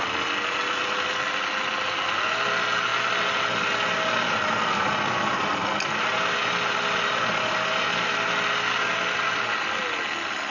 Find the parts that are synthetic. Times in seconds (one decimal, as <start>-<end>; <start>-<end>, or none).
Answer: none